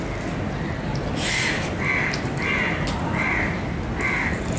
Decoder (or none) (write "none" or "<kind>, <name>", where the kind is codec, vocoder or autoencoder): none